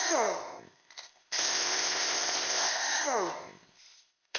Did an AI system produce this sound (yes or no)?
yes